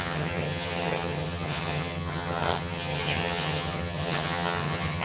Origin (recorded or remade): remade